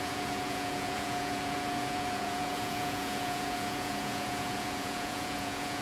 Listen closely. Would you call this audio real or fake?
fake